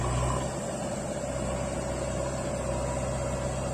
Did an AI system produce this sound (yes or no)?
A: no